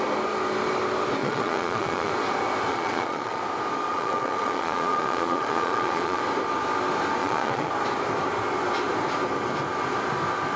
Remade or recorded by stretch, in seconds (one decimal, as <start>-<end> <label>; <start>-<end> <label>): 0.0-1.2 recorded; 1.2-2.1 remade; 2.1-2.7 recorded; 2.7-3.4 remade; 3.4-3.9 recorded; 3.9-6.2 remade; 6.2-7.2 recorded; 7.2-7.7 remade; 7.7-10.6 recorded